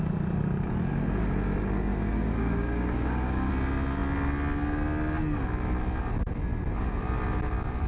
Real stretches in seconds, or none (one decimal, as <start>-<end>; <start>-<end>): 0.0-1.9; 3.5-7.9

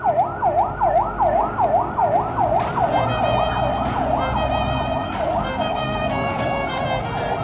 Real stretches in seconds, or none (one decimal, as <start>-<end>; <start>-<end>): 0.0-5.0; 6.8-7.4

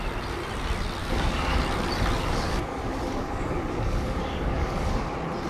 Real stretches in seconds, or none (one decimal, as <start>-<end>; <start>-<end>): 0.0-1.0; 1.6-2.2; 5.1-5.5